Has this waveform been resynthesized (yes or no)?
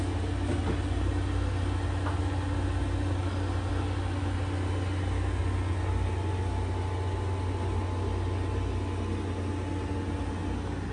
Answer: no